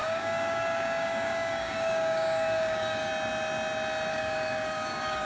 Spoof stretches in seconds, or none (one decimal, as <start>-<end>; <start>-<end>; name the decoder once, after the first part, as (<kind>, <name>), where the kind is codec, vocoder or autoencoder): 0.0-3.1 (codec, DAC); 4.1-5.2